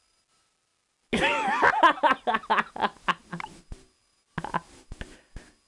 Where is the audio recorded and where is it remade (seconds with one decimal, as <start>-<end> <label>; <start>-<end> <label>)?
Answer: 0.0-5.7 recorded